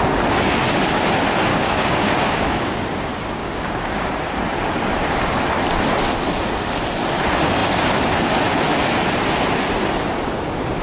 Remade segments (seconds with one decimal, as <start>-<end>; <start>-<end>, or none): 1.5-2.6; 3.4-4.1